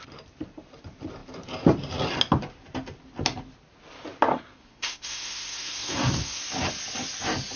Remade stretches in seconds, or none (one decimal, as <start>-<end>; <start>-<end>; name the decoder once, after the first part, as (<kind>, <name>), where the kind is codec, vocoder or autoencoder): 4.3-6.4 (codec, SNAC)